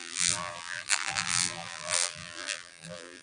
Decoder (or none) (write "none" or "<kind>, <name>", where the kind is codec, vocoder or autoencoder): vocoder, BigVGAN v2